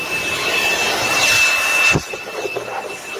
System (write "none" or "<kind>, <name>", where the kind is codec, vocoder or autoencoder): none